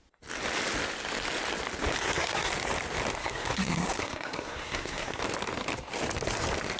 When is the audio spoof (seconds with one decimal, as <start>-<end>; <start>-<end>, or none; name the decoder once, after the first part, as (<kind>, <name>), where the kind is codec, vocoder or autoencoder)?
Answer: 2.0-2.5 (codec, SNAC); 3.2-5.2